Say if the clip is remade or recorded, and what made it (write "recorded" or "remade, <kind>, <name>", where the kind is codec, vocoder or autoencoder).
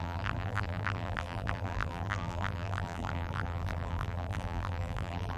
remade, vocoder, BigVGAN v2